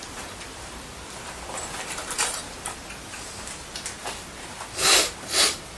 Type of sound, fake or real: fake